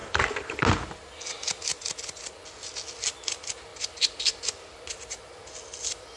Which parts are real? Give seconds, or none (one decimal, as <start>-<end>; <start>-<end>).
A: 0.6-1.7; 2.4-3.7; 5.2-6.2